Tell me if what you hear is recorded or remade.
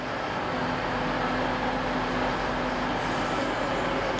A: recorded